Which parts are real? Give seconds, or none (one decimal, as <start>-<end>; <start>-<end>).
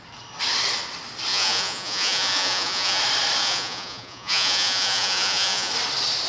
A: 0.0-1.3; 3.0-3.4; 5.7-6.3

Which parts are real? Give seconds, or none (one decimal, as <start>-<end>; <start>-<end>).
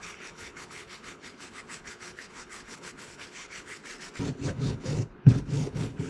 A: 3.8-4.3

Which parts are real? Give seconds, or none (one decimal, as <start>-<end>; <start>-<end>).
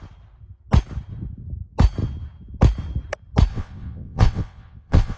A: 0.0-3.5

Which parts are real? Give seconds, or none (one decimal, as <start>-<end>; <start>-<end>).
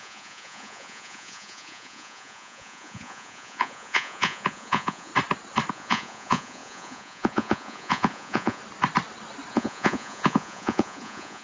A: 5.1-5.7; 8.6-9.5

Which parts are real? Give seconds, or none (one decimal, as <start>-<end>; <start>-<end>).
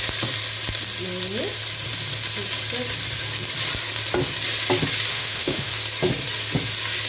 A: 0.0-5.1; 5.7-7.1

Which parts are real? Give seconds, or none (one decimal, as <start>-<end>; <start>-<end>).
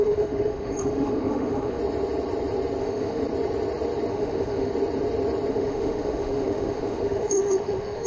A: 1.8-2.8; 3.2-4.1; 4.7-5.5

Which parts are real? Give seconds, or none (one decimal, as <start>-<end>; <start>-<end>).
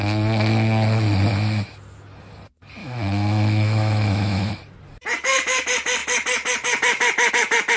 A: 0.0-2.8; 4.5-7.8